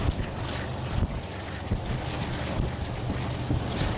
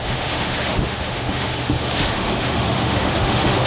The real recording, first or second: first